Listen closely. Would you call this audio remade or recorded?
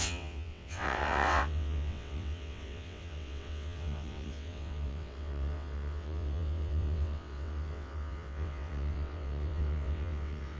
remade